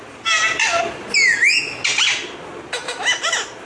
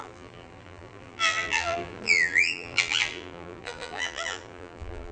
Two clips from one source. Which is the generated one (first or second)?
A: second